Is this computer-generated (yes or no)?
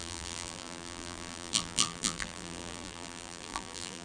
yes